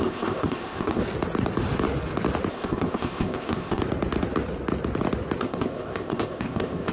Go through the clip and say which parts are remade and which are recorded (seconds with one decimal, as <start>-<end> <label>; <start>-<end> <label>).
0.0-1.0 remade; 1.0-2.5 recorded; 2.5-3.8 remade; 3.8-5.4 recorded; 5.4-6.9 remade